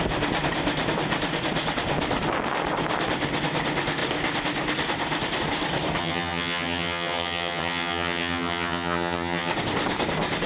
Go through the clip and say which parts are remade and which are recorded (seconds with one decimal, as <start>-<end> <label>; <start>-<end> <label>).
0.0-6.0 recorded; 6.0-9.5 remade; 9.5-10.5 recorded